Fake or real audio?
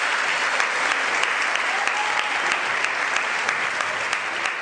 real